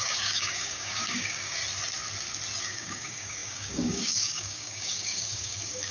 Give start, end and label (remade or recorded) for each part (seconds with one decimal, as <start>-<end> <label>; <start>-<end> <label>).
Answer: 0.0-1.6 remade; 1.6-2.6 recorded; 2.6-5.9 remade